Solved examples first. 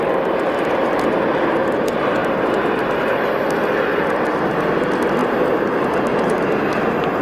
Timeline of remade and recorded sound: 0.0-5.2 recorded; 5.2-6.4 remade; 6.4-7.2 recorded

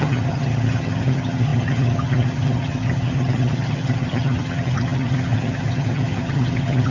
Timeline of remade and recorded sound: 0.0-6.9 remade

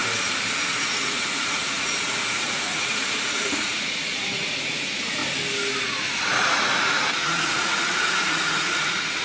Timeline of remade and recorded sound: 0.0-0.7 recorded; 0.7-5.2 remade; 5.2-5.8 recorded; 5.8-9.2 remade

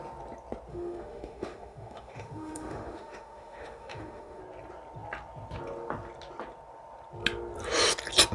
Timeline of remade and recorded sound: 0.0-0.7 recorded; 0.7-4.4 remade; 4.4-8.3 recorded

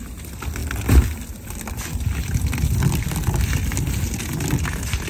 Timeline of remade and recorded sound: 0.0-5.1 recorded